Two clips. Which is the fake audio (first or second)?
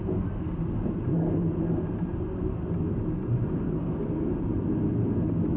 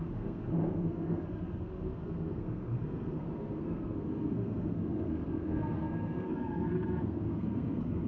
second